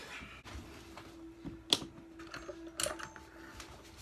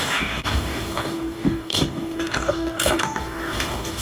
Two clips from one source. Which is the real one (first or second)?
first